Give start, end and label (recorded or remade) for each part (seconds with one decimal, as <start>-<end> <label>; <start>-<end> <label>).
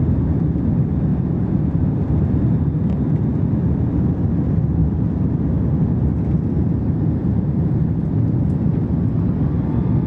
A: 0.0-1.1 recorded; 1.1-2.1 remade; 2.1-7.2 recorded; 7.2-8.1 remade; 8.1-10.1 recorded